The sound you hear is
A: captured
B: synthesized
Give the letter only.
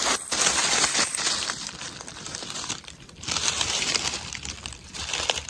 B